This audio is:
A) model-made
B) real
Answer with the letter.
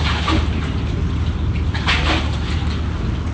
B